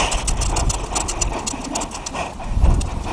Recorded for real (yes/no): yes